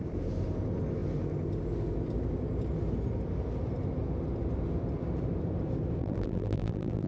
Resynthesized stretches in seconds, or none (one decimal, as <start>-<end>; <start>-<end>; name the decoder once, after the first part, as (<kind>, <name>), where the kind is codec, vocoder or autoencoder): 6.0-7.1 (vocoder, BigVGAN v2)